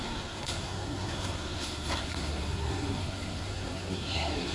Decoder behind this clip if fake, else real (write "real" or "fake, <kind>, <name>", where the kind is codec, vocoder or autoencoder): fake, codec, SNAC